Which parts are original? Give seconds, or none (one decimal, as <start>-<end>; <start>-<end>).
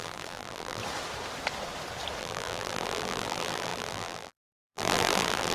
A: 0.8-2.2